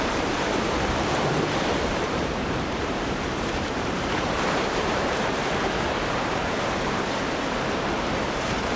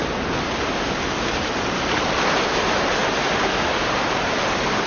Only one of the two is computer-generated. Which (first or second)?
first